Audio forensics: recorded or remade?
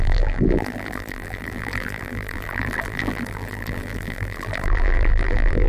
remade